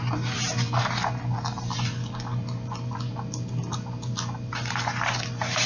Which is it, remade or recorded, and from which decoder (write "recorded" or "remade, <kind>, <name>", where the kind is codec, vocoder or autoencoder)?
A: recorded